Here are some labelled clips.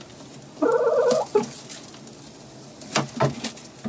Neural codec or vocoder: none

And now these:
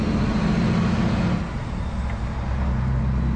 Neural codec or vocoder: none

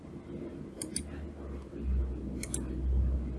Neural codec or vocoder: none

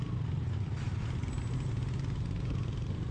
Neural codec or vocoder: none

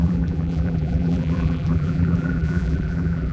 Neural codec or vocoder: vocoder, BigVGAN v2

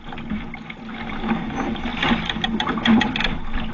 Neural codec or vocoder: none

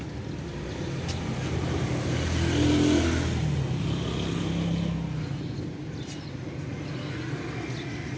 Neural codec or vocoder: none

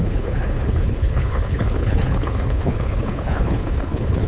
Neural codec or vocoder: codec, HILCodec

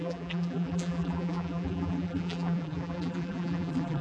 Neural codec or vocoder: vocoder, BigVGAN v2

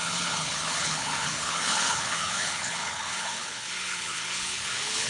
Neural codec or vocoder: codec, HILCodec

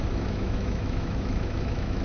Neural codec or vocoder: autoencoder, DAC-VAE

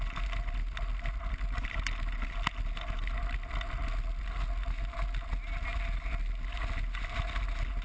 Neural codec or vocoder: none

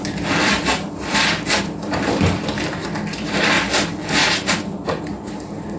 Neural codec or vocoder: none